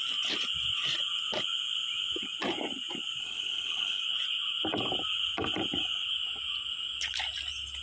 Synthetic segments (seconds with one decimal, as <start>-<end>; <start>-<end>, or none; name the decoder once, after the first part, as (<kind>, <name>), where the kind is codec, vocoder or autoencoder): 3.2-4.0 (codec, HILCodec)